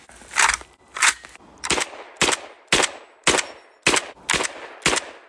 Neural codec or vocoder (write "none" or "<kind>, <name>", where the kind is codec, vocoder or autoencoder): none